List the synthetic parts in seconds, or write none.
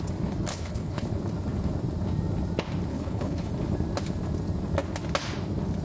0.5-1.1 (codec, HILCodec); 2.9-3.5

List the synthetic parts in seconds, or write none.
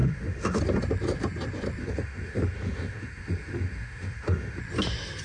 0.0-0.6 (autoencoder, DAC-VAE); 1.8-4.6